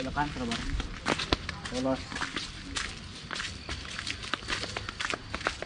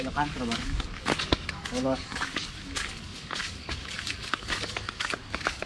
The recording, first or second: first